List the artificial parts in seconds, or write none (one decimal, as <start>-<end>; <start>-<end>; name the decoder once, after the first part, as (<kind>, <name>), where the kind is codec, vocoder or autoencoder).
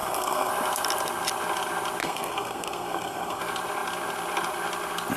0.0-0.5 (codec, SNAC); 2.0-3.4